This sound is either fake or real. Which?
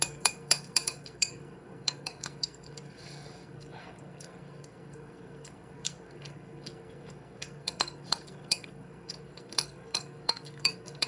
fake